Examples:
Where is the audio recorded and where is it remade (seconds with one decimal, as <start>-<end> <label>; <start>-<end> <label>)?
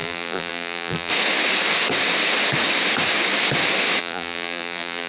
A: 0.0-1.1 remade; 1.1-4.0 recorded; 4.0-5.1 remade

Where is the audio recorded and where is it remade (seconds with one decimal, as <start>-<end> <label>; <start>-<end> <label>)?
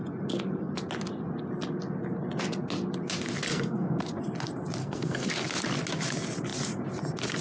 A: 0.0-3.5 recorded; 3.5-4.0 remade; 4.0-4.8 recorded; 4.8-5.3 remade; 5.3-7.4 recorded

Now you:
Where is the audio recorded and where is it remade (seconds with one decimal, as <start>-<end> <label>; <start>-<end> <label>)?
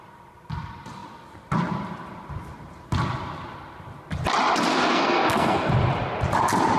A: 0.0-4.7 recorded; 4.7-5.7 remade; 5.7-6.8 recorded